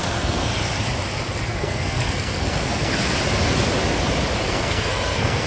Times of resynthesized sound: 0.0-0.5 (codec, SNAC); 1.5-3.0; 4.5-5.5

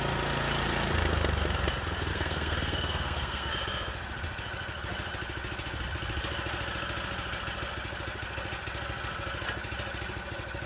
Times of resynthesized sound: 2.1-3.5 (codec, SNAC)

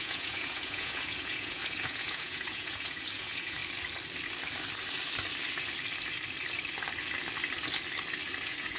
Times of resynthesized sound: 0.0-3.6 (vocoder, Vocos); 8.4-8.8

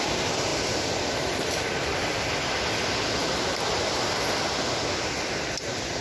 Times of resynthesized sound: 0.5-2.7 (vocoder, BigVGAN v2)

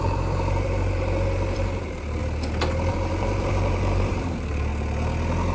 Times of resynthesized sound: 0.0-2.2 (vocoder, BigVGAN v2); 2.9-4.7

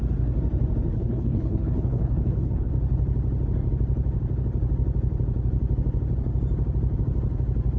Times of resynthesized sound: 0.9-2.7 (codec, HILCodec)